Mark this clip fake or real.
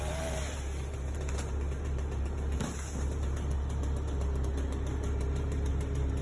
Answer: fake